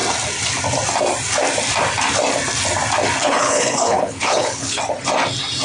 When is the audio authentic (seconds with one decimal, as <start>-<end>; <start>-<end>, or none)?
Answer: 0.0-3.2; 4.8-5.6